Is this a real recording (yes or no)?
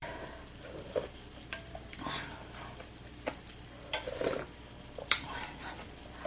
no